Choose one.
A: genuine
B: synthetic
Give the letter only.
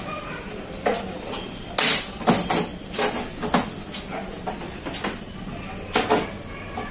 A